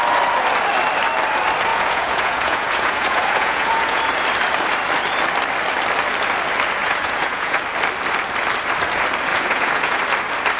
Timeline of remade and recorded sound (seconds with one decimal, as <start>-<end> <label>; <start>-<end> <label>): 0.0-1.7 recorded; 1.7-4.0 remade; 4.0-6.8 recorded; 6.8-7.6 remade; 7.6-9.3 recorded; 9.3-10.0 remade; 10.0-10.6 recorded